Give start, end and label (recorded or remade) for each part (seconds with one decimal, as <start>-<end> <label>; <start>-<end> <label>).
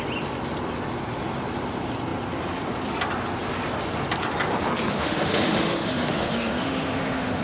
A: 0.0-4.9 recorded; 4.9-7.4 remade